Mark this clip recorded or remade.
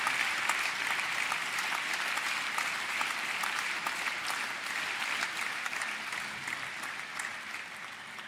recorded